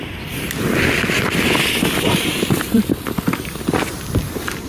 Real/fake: fake